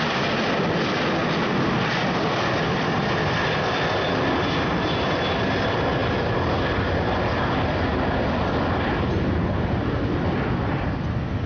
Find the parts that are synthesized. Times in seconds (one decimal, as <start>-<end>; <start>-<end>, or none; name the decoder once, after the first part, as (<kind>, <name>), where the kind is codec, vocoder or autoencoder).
none